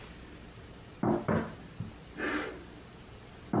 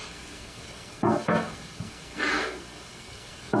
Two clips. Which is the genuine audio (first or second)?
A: first